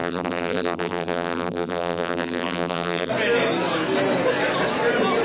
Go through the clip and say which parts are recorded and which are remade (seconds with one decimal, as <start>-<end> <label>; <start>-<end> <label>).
0.0-3.1 remade; 3.1-5.2 recorded